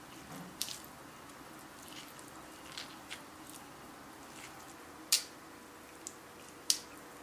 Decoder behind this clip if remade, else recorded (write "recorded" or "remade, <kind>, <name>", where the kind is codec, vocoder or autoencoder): recorded